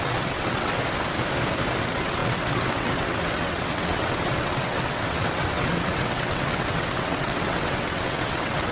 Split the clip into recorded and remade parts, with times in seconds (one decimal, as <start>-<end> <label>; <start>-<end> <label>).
0.0-0.7 remade; 0.7-1.8 recorded; 1.8-8.7 remade